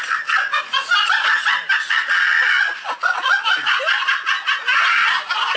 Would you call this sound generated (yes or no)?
no